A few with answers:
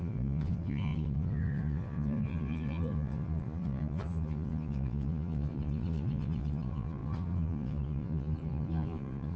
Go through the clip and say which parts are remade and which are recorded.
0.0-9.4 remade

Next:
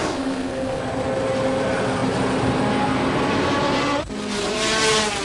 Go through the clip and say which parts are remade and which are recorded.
0.0-0.8 remade; 0.8-5.2 recorded

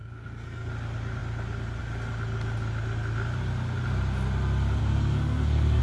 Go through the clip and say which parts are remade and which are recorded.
0.0-0.7 remade; 0.7-4.8 recorded; 4.8-5.8 remade

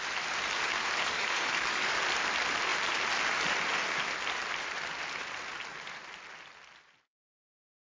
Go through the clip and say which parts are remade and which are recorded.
0.0-1.0 recorded; 1.0-2.0 remade; 2.0-7.8 recorded

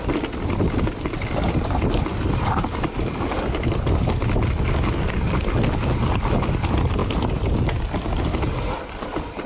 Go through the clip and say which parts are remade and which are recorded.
0.0-9.5 recorded

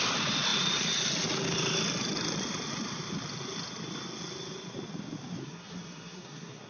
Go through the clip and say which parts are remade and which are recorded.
0.0-5.4 recorded; 5.4-6.7 remade

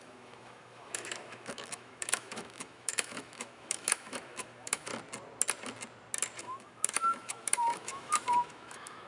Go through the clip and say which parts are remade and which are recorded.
0.0-4.9 remade; 4.9-6.4 recorded; 6.4-9.1 remade